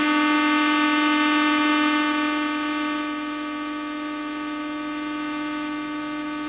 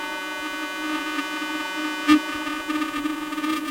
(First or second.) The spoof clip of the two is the second